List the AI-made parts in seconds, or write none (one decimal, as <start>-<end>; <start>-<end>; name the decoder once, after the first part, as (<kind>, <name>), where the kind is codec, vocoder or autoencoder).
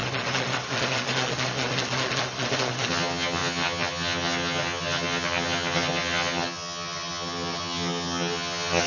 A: 2.9-8.9 (vocoder, HiFi-GAN)